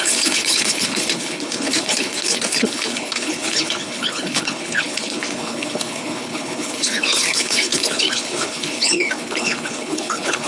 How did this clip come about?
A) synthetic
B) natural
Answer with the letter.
A